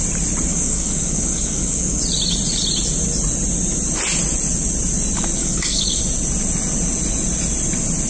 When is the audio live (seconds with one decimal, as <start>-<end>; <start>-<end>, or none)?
0.0-0.5; 2.0-5.4; 6.0-8.1